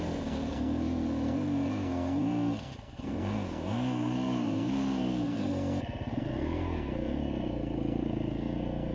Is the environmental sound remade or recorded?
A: remade